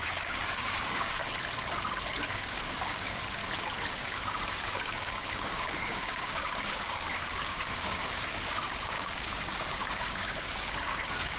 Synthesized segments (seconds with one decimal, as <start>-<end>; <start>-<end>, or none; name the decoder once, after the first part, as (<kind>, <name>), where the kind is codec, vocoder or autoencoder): 0.0-1.2 (codec, DAC); 2.3-3.4; 3.9-11.4

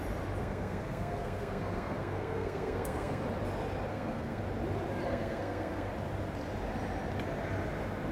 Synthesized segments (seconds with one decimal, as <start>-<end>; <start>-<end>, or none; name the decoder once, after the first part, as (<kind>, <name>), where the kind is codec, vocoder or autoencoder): 0.4-3.2 (codec, SNAC); 3.9-4.4; 5.1-5.9